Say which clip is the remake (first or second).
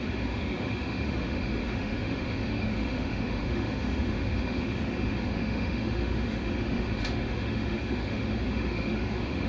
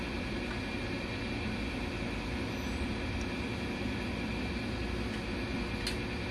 first